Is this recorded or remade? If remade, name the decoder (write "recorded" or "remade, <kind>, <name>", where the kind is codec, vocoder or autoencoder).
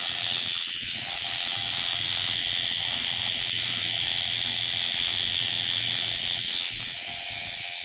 remade, autoencoder, DAC-VAE